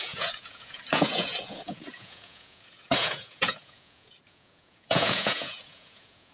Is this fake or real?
fake